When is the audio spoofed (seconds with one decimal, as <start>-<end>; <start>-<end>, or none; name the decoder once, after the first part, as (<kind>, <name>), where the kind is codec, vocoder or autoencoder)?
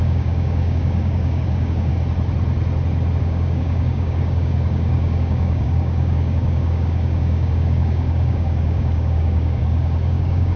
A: 0.0-1.9 (codec, DAC); 3.2-10.6